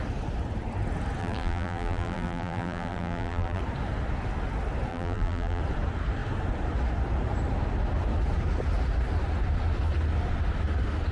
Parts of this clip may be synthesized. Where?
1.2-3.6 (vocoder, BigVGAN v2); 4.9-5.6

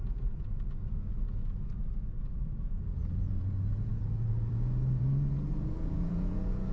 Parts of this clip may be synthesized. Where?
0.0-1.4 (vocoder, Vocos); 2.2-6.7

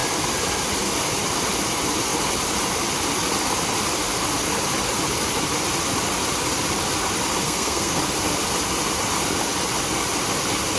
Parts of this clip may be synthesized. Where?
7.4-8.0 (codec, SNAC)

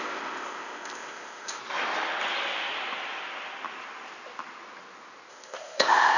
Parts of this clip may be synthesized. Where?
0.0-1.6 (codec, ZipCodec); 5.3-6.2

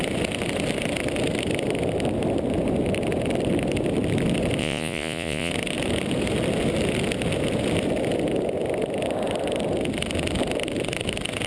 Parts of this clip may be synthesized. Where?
4.6-5.5 (vocoder, Vocos)

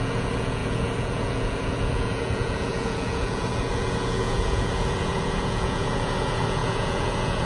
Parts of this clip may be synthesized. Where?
0.0-7.5 (vocoder, Vocos)

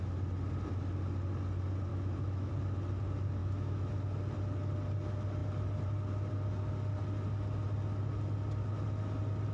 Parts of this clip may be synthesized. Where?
1.9-2.5 (autoencoder, DAC-VAE); 3.4-3.9